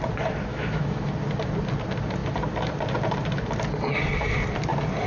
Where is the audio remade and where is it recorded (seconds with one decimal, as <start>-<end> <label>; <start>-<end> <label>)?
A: 0.0-0.5 recorded; 0.5-1.1 remade; 1.1-5.1 recorded